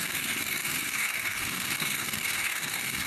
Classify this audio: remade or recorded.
remade